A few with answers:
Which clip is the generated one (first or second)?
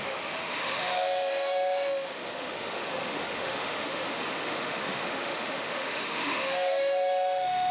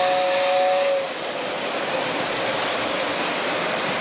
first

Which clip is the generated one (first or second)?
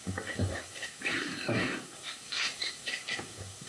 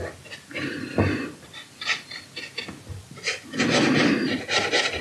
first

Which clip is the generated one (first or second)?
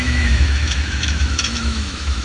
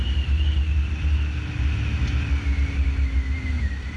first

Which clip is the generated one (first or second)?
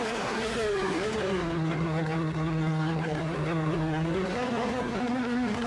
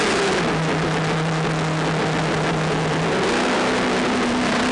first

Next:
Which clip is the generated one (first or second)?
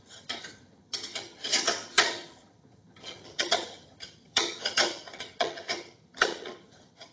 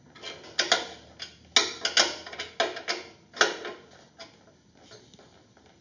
first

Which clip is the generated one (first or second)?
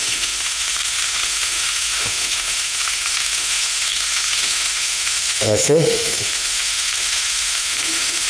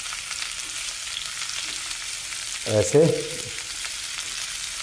first